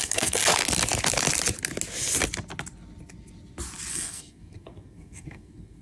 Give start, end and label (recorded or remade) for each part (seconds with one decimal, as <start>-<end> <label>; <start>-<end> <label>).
0.0-0.4 remade; 0.4-3.9 recorded; 3.9-5.8 remade